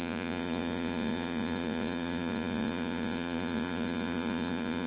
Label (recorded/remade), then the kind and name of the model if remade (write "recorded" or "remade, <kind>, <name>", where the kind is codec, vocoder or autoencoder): remade, vocoder, Vocos